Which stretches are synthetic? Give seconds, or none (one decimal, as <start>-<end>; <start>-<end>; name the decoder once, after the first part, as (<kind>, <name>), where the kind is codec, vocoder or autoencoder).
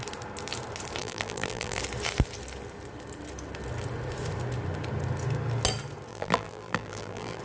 1.0-1.8 (vocoder, BigVGAN v2); 6.1-7.4